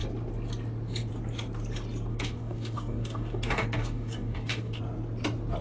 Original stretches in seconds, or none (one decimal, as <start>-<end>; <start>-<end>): 0.0-2.1; 4.8-5.6